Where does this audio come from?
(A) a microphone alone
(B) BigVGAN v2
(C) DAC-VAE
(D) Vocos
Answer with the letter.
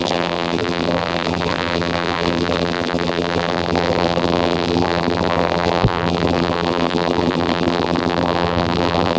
B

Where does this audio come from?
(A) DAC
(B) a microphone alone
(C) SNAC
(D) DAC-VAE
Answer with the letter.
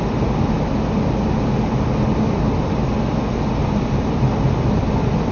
B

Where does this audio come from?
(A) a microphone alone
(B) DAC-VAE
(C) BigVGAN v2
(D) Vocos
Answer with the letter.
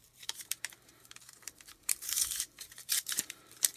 C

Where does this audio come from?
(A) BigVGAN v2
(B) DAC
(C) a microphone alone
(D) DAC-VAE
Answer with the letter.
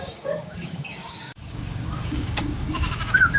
B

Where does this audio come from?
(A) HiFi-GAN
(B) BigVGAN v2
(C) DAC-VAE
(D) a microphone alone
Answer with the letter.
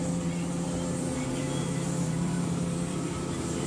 B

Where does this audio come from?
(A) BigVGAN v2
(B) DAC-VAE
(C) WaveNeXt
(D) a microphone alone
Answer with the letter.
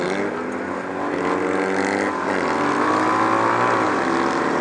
D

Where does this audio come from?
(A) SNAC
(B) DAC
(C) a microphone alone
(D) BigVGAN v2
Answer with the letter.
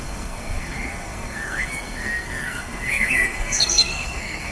A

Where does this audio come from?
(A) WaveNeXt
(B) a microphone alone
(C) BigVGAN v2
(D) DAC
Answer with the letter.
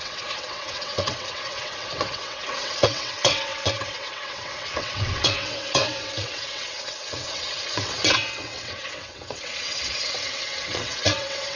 A